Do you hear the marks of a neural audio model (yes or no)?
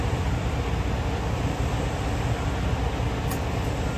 no